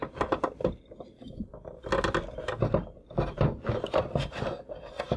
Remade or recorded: recorded